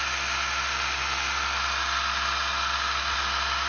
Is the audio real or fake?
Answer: real